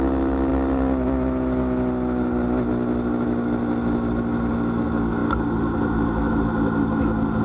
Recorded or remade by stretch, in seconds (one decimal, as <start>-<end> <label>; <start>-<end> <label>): 0.0-7.4 recorded